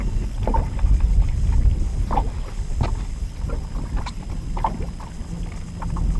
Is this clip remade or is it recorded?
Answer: recorded